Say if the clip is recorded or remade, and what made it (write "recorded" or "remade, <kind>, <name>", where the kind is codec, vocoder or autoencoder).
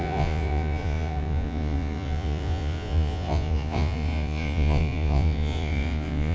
remade, vocoder, Vocos